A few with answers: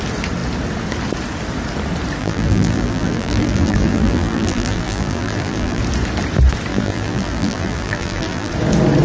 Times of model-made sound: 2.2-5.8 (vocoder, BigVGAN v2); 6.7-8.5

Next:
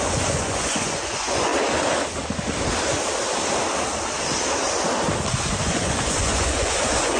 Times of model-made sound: 0.0-1.5 (vocoder, Vocos); 5.4-7.2

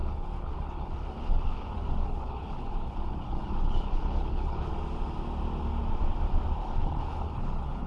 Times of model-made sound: 0.0-4.7 (codec, HILCodec); 6.6-7.9

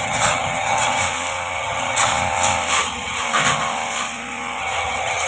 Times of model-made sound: 0.0-1.0 (vocoder, HiFi-GAN); 1.6-2.1; 2.8-3.2; 4.6-5.3

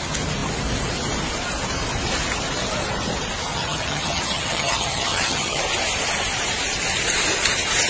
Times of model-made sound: 3.5-5.6 (vocoder, HiFi-GAN)

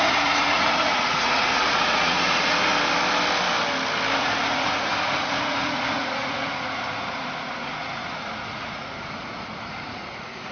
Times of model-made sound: 0.0-2.7 (vocoder, Vocos); 4.2-10.5

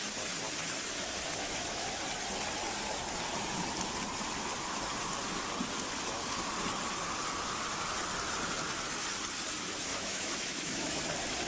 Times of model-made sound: 1.4-2.0 (autoencoder, DAC-VAE); 9.9-11.0